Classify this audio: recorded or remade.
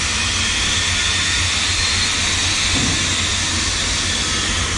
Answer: recorded